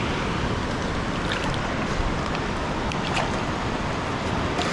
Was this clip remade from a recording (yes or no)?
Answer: no